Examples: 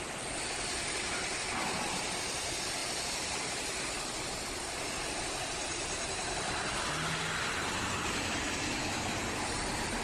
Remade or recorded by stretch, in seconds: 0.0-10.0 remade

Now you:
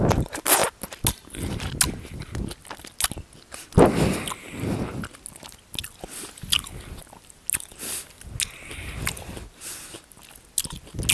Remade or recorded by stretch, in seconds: 0.0-11.1 recorded

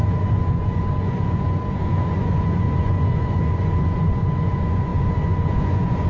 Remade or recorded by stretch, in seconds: 0.0-6.1 remade

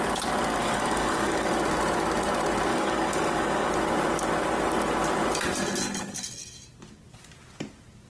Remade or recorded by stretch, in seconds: 0.0-0.6 recorded; 0.6-1.5 remade; 1.5-2.7 recorded; 2.7-3.7 remade; 3.7-8.1 recorded